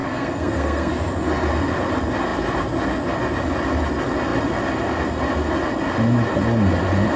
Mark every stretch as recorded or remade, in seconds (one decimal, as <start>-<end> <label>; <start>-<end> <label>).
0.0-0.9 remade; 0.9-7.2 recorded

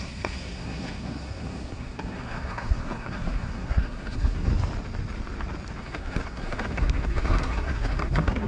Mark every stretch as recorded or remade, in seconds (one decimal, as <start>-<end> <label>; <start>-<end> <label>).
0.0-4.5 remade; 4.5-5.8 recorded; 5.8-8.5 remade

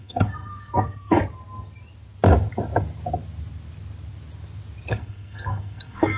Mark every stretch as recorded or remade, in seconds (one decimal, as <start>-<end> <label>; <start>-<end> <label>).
0.0-1.2 remade; 1.2-4.9 recorded; 4.9-6.2 remade

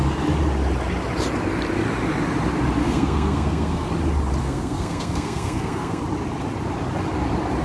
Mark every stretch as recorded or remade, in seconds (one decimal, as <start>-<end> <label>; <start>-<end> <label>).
0.0-2.8 recorded; 2.8-3.9 remade; 3.9-4.4 recorded; 4.4-6.0 remade; 6.0-7.6 recorded

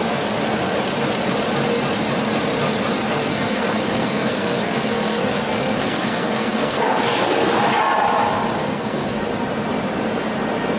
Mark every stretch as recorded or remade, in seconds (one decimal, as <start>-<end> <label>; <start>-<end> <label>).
0.0-3.3 recorded; 3.3-7.5 remade; 7.5-8.6 recorded; 8.6-9.2 remade; 9.2-10.8 recorded